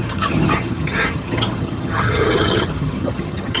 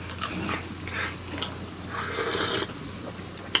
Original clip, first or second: second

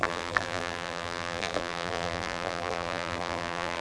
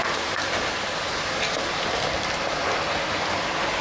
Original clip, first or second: second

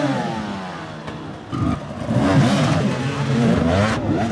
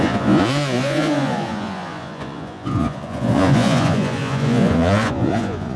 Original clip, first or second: first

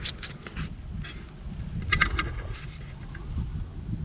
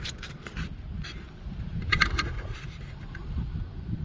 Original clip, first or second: first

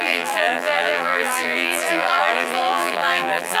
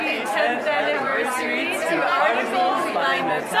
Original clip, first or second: second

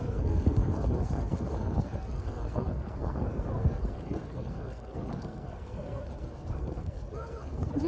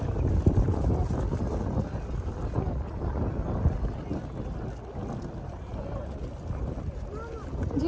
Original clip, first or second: second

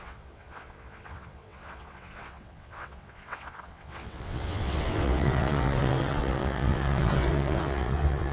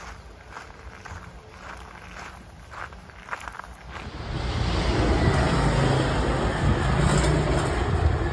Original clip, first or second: second